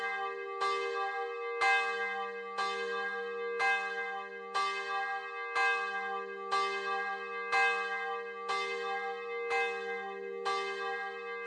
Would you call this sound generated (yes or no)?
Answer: no